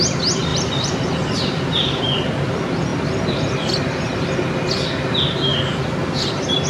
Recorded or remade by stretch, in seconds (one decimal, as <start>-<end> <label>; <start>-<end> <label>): 0.0-0.5 recorded; 0.5-2.2 remade; 2.2-5.5 recorded; 5.5-6.7 remade